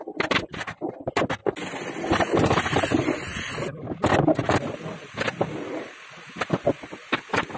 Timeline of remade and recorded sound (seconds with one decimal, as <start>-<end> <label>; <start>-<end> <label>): 0.0-7.6 recorded